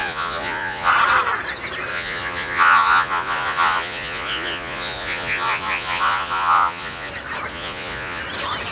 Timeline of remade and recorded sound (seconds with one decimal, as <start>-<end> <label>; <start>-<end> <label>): 0.0-0.9 remade; 0.9-1.9 recorded; 1.9-7.1 remade; 7.1-7.5 recorded; 7.5-8.2 remade; 8.2-8.7 recorded